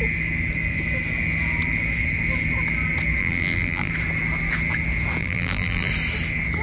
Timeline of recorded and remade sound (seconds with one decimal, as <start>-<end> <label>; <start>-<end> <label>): 0.0-3.2 recorded; 3.2-3.9 remade; 3.9-5.2 recorded; 5.2-5.9 remade; 5.9-6.6 recorded